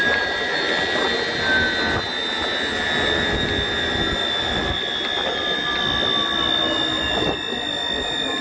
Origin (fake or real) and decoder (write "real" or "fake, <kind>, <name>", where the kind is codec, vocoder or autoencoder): real